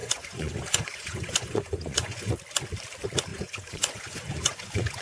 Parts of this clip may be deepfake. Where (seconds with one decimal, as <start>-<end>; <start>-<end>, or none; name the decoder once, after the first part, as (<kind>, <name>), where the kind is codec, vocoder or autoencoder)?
0.0-2.4 (vocoder, Vocos); 3.3-5.0